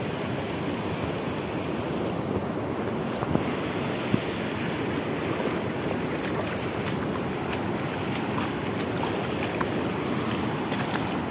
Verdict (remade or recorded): recorded